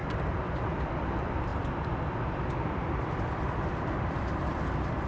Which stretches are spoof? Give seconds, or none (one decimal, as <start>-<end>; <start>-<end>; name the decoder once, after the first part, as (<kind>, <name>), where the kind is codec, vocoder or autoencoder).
0.0-1.0 (vocoder, BigVGAN v2); 1.5-4.6

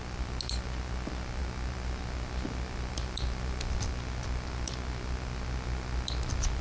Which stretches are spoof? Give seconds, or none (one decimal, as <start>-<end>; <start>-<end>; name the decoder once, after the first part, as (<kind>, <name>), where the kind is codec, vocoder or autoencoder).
none

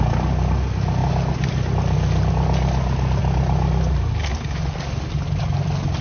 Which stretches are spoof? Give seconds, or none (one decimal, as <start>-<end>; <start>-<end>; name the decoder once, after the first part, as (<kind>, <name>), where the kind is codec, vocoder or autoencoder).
none